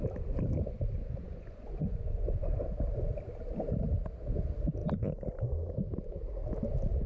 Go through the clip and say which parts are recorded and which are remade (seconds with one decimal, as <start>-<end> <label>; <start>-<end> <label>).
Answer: 0.0-1.0 recorded; 1.0-2.5 remade; 2.5-7.1 recorded